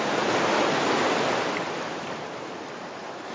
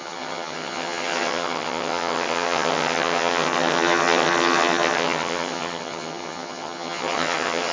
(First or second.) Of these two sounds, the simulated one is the second